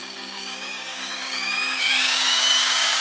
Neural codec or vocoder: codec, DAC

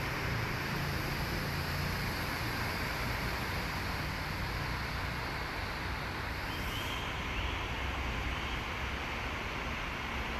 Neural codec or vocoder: none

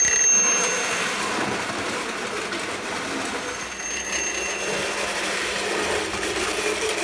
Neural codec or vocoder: none